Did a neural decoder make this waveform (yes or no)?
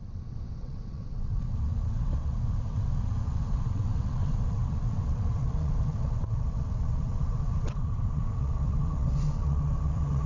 yes